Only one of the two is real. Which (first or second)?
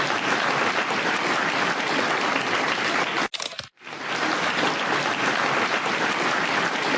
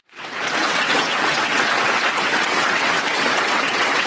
first